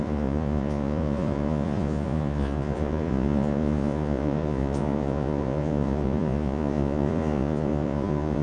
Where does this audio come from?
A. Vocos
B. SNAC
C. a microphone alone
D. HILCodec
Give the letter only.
A